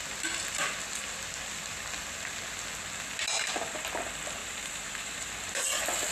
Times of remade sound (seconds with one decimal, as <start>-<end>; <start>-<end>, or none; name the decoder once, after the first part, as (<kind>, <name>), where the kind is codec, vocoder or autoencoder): 4.4-5.3 (vocoder, BigVGAN v2)